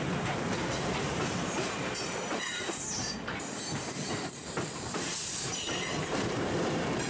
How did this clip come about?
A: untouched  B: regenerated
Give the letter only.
B